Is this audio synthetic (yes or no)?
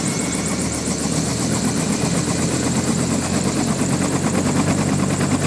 no